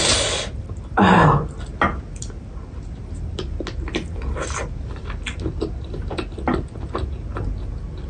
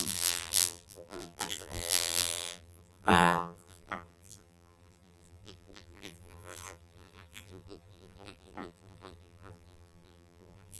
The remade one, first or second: second